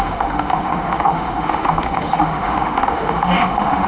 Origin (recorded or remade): remade